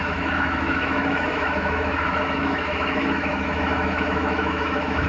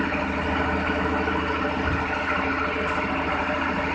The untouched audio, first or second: second